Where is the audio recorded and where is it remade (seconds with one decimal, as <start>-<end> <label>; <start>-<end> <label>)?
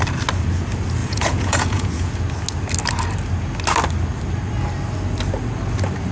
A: 0.0-1.0 recorded; 1.0-2.1 remade; 2.1-6.1 recorded